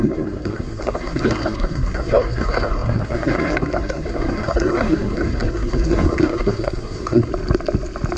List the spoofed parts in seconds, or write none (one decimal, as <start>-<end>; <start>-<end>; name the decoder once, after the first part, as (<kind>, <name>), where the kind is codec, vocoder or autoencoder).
0.0-7.3 (codec, SNAC)